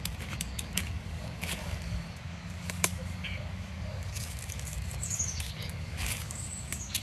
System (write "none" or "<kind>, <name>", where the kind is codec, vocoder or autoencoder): codec, DAC